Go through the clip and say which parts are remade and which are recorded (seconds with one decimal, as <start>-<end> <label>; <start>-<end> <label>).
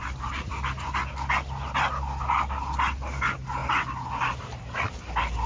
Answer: 0.0-5.5 recorded